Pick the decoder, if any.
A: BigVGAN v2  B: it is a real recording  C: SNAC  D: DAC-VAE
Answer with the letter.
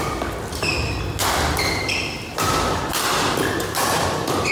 B